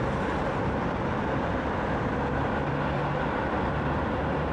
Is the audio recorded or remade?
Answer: recorded